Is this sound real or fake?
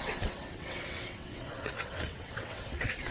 fake